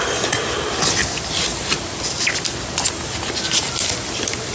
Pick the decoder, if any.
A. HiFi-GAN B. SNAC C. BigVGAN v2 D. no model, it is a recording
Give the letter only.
D